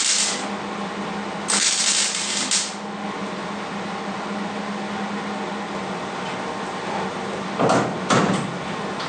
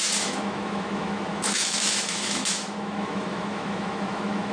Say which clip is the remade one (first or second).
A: second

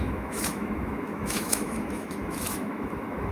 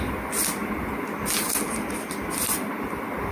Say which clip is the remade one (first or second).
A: first